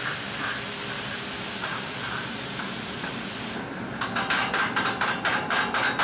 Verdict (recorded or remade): recorded